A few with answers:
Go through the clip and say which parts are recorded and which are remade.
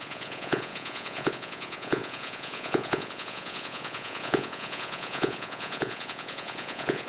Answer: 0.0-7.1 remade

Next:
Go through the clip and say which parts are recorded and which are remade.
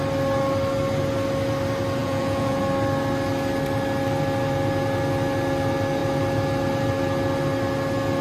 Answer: 0.0-2.0 recorded; 2.0-2.6 remade; 2.6-8.2 recorded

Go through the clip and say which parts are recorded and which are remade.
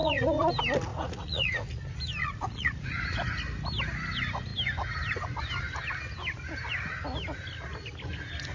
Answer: 0.0-0.5 remade; 0.5-0.9 recorded; 0.9-1.8 remade; 1.8-2.2 recorded; 2.2-3.0 remade; 3.0-8.5 recorded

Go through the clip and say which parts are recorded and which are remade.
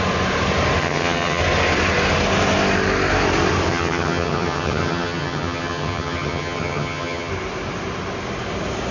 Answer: 0.0-0.8 recorded; 0.8-1.4 remade; 1.4-3.7 recorded; 3.7-7.3 remade; 7.3-8.9 recorded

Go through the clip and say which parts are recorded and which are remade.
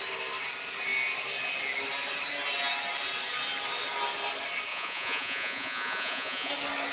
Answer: 0.0-4.7 recorded; 4.7-6.5 remade; 6.5-6.9 recorded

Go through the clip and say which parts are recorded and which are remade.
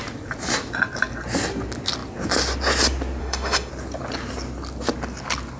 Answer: 0.0-3.2 recorded; 3.2-3.7 remade; 3.7-5.6 recorded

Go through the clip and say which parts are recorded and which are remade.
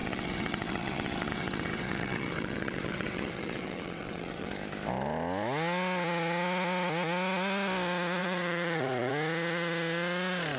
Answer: 0.0-4.5 remade; 4.5-8.2 recorded; 8.2-9.1 remade; 9.1-10.6 recorded